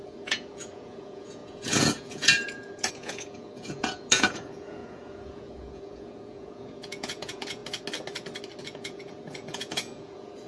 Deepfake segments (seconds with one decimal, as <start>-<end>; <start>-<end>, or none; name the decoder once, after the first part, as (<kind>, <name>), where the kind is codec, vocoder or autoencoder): 0.0-7.6 (vocoder, Vocos); 8.6-10.5